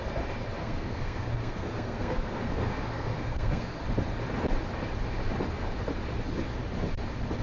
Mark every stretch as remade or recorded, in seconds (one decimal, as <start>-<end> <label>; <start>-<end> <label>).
0.0-0.6 recorded; 0.6-3.8 remade; 3.8-7.4 recorded

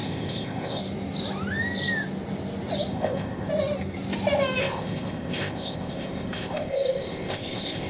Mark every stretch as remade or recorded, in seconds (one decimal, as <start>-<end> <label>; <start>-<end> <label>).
0.0-0.8 remade; 0.8-2.9 recorded; 2.9-3.5 remade; 3.5-4.6 recorded; 4.6-7.9 remade

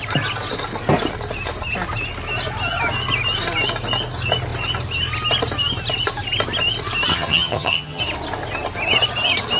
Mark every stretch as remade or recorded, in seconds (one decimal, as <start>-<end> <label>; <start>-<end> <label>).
0.0-7.1 recorded; 7.1-8.0 remade; 8.0-9.6 recorded

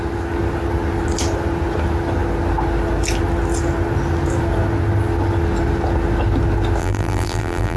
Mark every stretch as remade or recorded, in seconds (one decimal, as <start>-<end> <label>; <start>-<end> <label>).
0.0-6.8 recorded; 6.8-7.8 remade

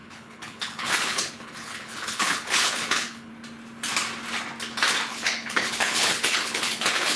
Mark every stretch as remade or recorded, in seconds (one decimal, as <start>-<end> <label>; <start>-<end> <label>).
0.0-3.3 remade; 3.3-5.1 recorded; 5.1-7.2 remade

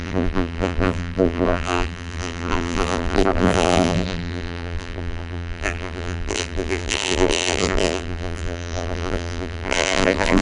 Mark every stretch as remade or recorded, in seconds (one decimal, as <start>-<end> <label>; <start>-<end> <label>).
0.0-10.4 remade